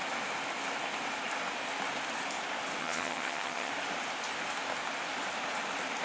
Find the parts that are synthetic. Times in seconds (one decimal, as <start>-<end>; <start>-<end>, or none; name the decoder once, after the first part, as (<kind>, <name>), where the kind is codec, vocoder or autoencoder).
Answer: 2.8-3.7 (vocoder, HiFi-GAN)